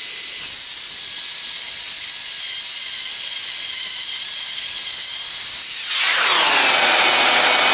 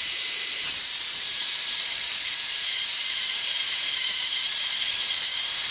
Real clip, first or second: first